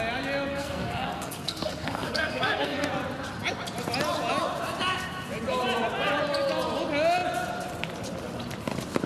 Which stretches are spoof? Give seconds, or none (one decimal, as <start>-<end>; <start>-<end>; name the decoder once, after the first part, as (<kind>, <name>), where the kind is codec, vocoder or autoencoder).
0.5-2.9 (codec, SNAC)